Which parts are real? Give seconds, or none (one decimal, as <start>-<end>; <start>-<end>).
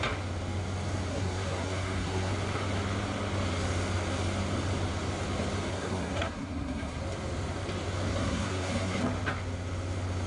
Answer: 0.0-1.1; 2.3-5.7; 7.0-8.1; 9.0-10.3